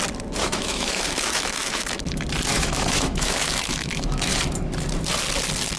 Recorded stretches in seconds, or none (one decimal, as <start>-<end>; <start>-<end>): 0.0-0.4; 2.0-2.5; 4.3-5.8

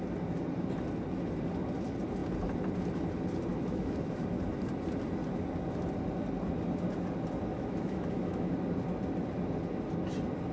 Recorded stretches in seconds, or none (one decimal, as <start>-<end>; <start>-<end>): 0.0-3.5; 4.4-7.5; 8.5-10.5

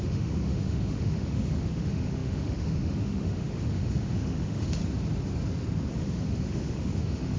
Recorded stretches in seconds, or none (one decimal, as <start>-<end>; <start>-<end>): 4.8-5.9

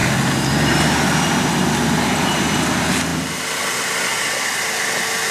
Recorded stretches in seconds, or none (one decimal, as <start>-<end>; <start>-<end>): 0.0-5.3

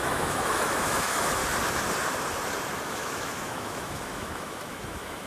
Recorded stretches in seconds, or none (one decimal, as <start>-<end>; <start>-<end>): 1.4-2.8